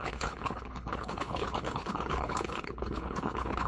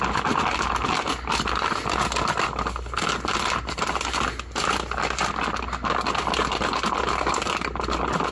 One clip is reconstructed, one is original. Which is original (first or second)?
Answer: second